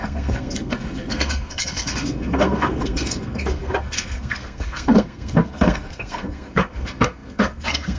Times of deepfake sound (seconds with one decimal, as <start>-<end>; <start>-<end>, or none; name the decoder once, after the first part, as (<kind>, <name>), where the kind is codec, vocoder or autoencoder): 0.0-8.0 (codec, SNAC)